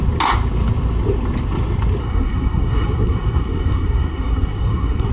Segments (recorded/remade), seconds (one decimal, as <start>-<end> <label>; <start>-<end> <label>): 0.0-2.0 recorded; 2.0-5.1 remade